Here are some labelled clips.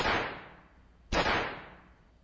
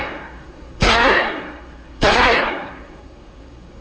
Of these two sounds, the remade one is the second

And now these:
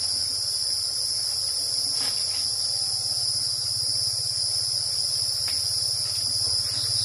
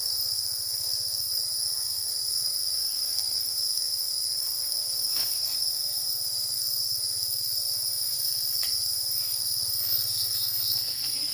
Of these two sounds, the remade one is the second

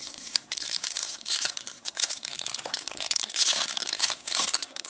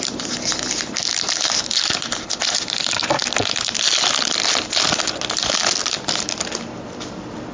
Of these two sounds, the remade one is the first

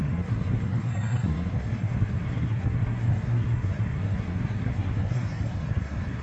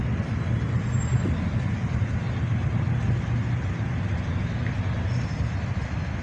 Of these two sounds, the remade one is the first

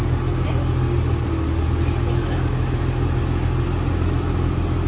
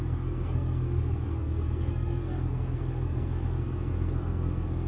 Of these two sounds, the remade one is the second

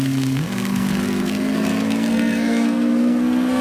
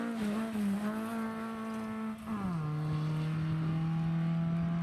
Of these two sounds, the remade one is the first